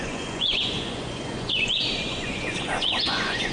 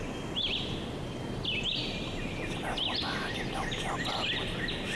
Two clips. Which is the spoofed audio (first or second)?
first